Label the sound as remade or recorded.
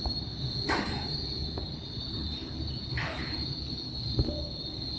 recorded